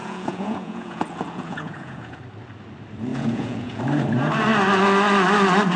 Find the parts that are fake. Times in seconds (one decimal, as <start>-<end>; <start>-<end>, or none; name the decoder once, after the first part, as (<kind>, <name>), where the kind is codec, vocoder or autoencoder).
0.0-2.2 (vocoder, Vocos); 3.1-3.8